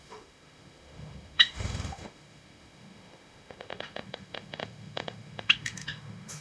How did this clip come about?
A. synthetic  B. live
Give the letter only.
A